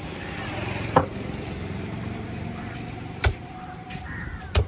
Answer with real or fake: fake